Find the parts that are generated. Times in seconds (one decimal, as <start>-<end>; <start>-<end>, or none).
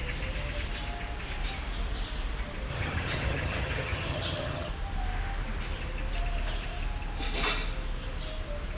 2.7-4.7